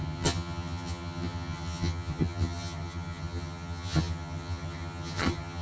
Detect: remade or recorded remade